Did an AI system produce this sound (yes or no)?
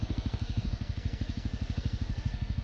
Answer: yes